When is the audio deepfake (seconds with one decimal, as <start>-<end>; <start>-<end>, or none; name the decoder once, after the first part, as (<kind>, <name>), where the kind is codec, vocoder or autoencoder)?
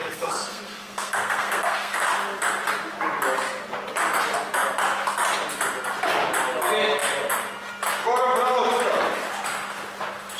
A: 0.0-2.0 (codec, SNAC)